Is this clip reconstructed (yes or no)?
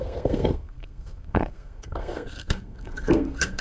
yes